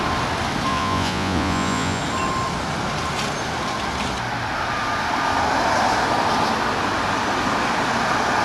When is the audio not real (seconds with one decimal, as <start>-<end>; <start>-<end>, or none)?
0.7-2.0